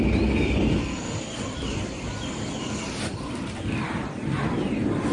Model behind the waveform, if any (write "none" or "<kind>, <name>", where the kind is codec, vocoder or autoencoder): none